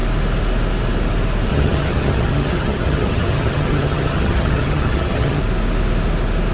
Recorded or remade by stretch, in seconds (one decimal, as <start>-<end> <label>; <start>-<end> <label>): 0.0-1.5 recorded; 1.5-5.4 remade; 5.4-6.5 recorded